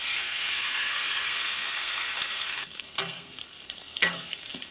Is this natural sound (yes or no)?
no